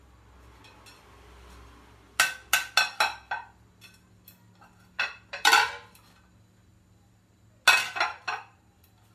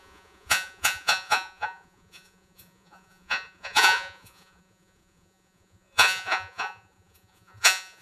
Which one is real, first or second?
first